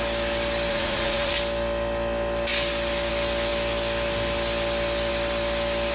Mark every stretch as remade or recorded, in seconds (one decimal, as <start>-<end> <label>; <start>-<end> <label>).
0.0-0.7 recorded; 0.7-1.3 remade; 1.3-5.9 recorded